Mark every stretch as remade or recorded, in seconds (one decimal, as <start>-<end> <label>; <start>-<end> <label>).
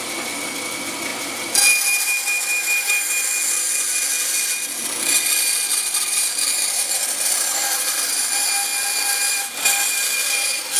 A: 0.0-5.7 recorded; 5.7-8.1 remade; 8.1-10.8 recorded